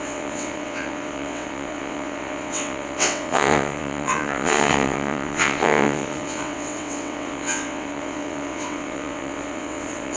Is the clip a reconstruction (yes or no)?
yes